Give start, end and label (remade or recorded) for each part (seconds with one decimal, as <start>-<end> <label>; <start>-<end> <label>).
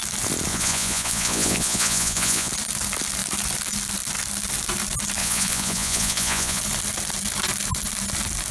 0.0-0.5 recorded; 0.5-2.5 remade; 2.5-5.2 recorded; 5.2-6.6 remade; 6.6-8.5 recorded